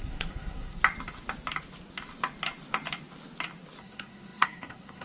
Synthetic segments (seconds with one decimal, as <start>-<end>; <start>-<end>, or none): 0.0-0.8; 3.8-5.0